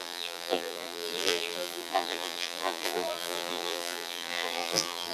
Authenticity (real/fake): fake